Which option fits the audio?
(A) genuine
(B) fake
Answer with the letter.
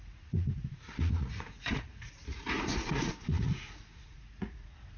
B